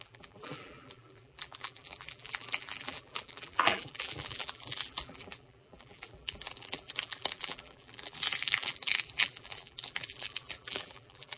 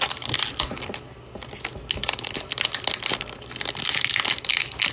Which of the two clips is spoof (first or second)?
first